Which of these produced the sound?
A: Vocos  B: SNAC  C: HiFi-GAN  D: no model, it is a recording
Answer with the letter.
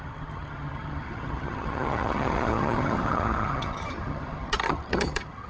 C